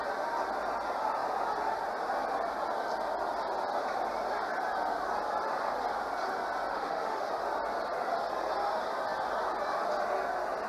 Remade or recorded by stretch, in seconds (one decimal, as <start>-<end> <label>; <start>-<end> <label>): 0.0-6.7 recorded; 6.7-7.3 remade; 7.3-10.7 recorded